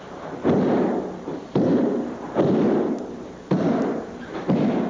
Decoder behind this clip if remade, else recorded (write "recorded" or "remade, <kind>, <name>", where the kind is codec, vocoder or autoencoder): remade, vocoder, BigVGAN v2